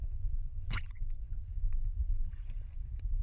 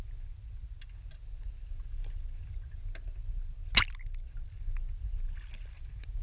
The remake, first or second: first